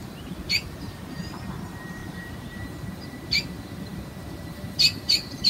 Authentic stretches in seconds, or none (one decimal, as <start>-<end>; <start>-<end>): none